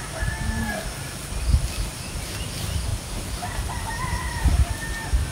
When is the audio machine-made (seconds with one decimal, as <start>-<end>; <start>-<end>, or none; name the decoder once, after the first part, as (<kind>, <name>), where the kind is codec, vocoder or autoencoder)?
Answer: 1.9-2.5 (vocoder, BigVGAN v2); 2.9-4.7